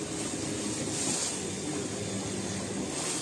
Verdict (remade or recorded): recorded